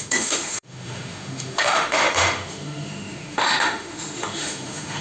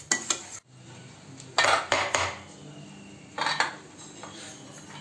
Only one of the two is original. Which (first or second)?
second